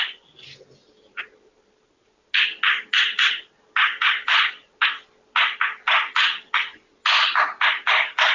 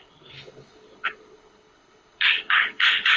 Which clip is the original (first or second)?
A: first